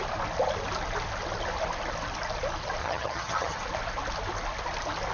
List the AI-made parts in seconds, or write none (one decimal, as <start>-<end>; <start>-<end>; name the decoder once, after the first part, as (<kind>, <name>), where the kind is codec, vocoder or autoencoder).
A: 2.8-3.6 (vocoder, HiFi-GAN)